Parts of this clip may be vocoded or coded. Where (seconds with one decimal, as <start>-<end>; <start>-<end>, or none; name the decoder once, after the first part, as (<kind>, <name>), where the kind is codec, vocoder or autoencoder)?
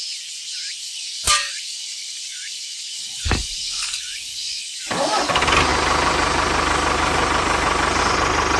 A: 0.8-5.3 (codec, DAC)